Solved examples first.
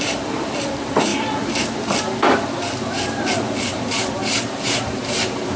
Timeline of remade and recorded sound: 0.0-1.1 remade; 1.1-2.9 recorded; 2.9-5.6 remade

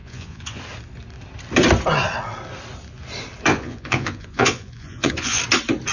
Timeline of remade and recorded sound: 0.0-0.6 remade; 0.6-3.5 recorded; 3.5-5.4 remade; 5.4-5.9 recorded

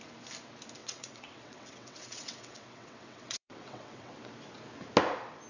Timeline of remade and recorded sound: 0.0-0.8 recorded; 0.8-4.1 remade; 4.1-5.5 recorded